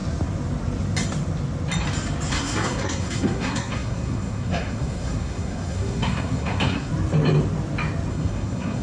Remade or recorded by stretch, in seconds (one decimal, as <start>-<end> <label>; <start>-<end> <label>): 0.0-2.3 recorded; 2.3-6.9 remade; 6.9-8.1 recorded; 8.1-8.8 remade